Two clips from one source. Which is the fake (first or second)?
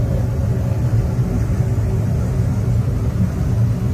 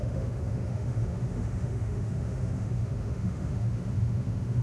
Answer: second